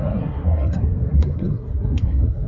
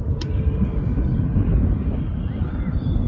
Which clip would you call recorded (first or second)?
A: second